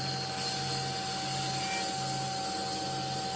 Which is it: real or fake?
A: real